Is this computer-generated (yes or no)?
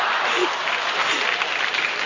no